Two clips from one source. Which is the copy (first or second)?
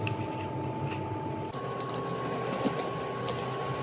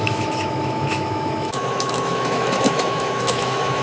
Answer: second